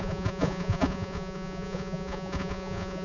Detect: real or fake fake